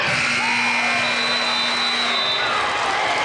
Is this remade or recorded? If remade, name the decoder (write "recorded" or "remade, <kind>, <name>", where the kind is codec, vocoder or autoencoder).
recorded